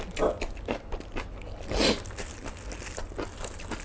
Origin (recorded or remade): recorded